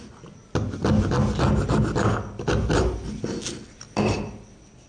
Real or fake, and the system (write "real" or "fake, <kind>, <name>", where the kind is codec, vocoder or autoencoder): real